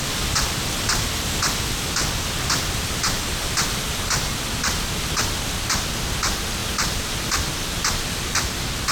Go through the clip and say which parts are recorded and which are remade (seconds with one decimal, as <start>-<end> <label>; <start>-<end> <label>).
0.0-8.9 recorded